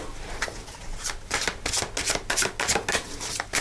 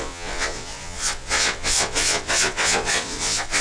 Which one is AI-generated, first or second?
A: second